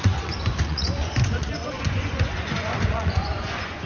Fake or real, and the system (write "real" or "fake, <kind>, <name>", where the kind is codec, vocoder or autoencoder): fake, vocoder, Vocos